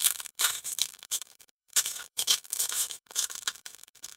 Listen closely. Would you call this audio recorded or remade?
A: remade